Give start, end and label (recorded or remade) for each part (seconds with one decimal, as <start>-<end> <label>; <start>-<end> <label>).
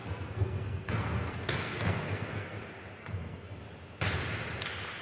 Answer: 0.0-2.6 remade; 2.6-3.0 recorded; 3.0-3.6 remade; 3.6-5.0 recorded